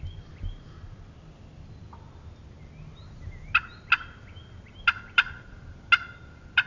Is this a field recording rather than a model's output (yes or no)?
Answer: yes